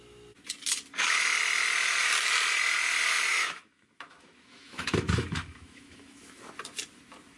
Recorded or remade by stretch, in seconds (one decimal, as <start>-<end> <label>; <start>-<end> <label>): 0.0-3.3 recorded; 3.3-6.5 remade; 6.5-7.4 recorded